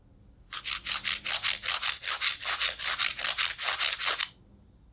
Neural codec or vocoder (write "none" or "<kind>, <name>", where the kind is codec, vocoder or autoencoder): none